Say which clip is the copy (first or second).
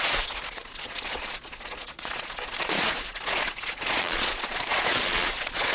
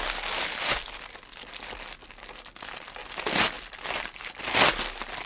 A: first